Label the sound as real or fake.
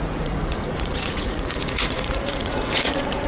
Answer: fake